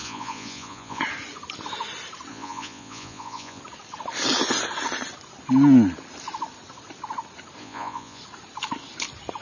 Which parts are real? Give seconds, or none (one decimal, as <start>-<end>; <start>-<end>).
1.0-2.3; 3.6-7.6; 8.2-9.4